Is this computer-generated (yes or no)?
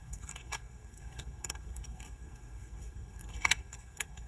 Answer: yes